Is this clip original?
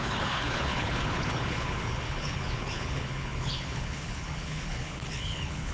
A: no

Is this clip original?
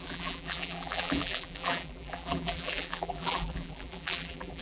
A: no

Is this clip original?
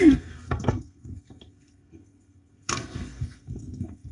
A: no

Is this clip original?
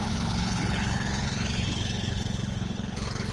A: no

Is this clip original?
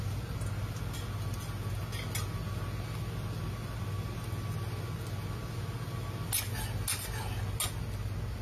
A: yes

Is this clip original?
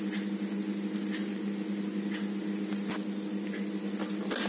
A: yes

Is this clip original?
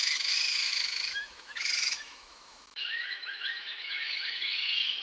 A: no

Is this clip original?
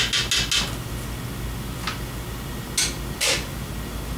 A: yes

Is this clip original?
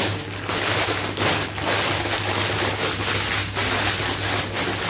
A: yes